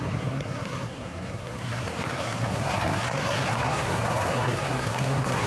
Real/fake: fake